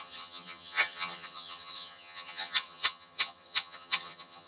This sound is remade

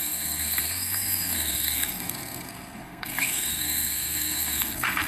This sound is remade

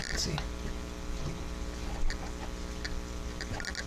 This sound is recorded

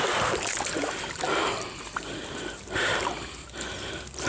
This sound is recorded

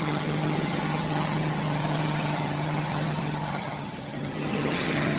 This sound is remade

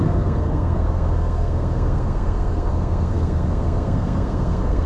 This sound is remade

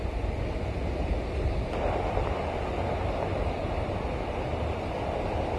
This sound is recorded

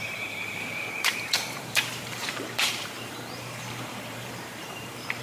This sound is remade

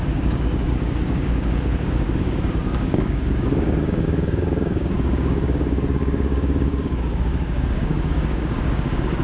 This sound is remade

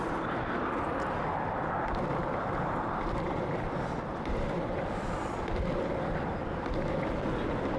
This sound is recorded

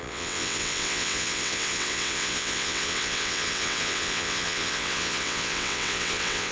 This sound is remade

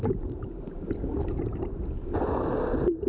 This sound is recorded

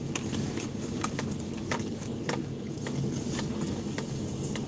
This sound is remade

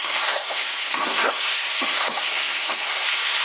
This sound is remade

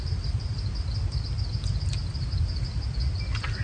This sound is recorded